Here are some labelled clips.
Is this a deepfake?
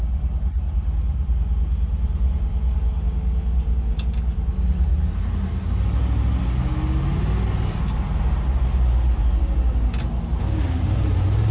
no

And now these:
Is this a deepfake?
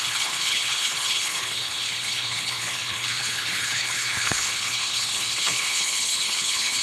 yes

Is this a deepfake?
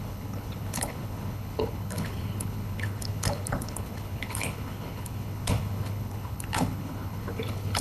yes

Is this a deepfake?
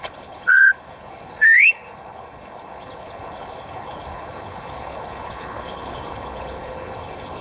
yes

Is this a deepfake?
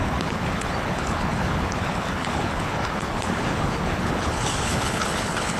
yes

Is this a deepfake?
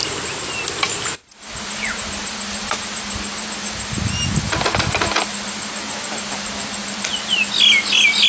no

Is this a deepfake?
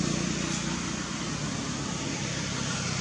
no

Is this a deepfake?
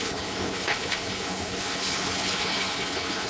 yes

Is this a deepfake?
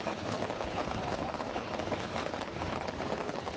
yes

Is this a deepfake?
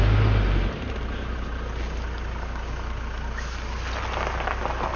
no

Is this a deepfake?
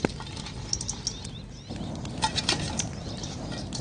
no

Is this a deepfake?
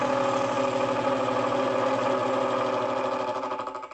no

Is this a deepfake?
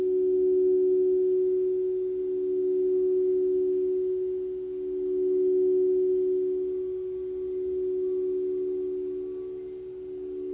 no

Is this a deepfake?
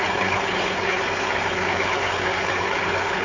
yes